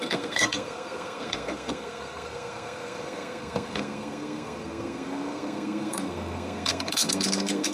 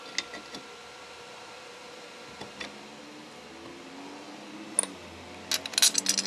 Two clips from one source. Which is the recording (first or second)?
second